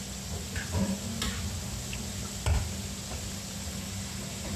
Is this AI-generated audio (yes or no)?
no